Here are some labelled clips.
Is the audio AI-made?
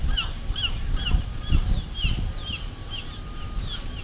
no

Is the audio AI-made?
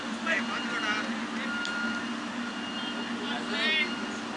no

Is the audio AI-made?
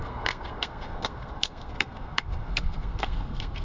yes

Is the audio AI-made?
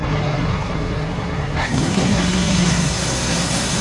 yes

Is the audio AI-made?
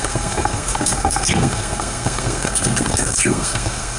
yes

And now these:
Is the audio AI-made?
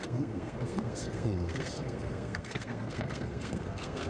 yes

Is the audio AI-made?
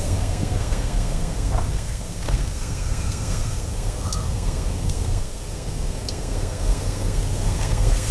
yes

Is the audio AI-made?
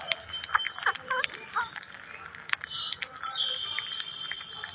no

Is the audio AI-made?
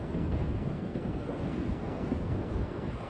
yes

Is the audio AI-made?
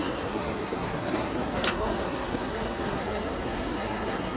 yes